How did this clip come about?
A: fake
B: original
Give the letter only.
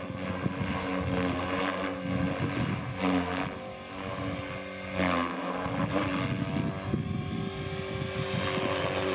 B